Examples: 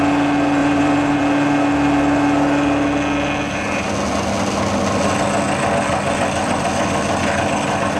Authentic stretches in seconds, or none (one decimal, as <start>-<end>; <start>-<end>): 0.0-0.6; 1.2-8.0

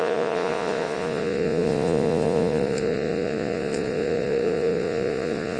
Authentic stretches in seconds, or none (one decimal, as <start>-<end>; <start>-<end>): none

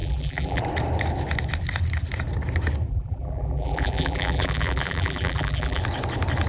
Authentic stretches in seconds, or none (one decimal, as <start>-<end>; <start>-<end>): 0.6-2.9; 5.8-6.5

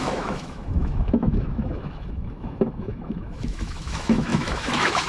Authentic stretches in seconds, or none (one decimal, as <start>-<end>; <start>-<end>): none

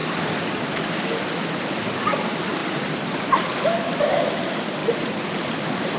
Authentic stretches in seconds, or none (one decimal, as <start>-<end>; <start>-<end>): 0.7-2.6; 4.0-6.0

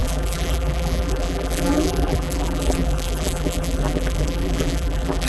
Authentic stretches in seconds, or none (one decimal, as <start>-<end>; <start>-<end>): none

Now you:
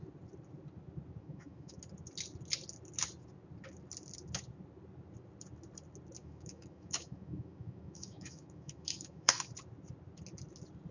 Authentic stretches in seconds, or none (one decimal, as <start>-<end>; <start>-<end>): 0.0-1.2; 1.8-6.2; 9.5-10.9

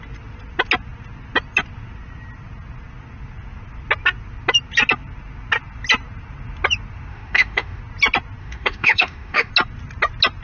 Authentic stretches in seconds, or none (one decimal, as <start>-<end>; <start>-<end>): 0.0-7.1; 7.8-8.4; 9.5-10.4